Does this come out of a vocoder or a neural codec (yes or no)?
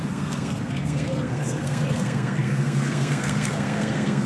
yes